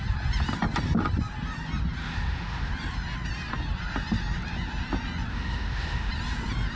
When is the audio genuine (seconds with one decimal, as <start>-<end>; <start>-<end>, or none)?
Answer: 0.0-2.0; 2.7-5.3; 6.1-6.8